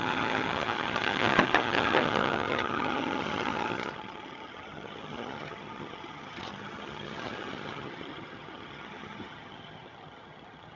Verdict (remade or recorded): remade